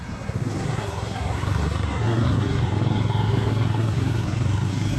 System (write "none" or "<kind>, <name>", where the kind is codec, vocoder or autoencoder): codec, SNAC